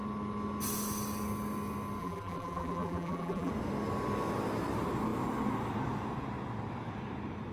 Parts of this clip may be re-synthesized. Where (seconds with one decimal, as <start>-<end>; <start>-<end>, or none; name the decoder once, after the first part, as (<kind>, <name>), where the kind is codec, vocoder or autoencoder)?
2.0-3.5 (vocoder, BigVGAN v2)